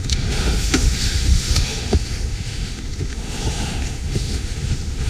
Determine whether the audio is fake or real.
fake